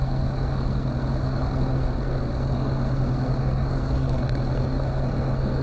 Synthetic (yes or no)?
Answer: yes